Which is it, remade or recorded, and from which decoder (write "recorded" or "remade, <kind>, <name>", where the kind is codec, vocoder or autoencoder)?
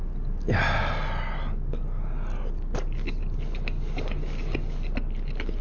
recorded